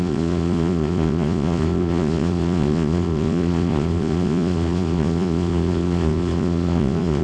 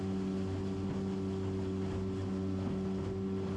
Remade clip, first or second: first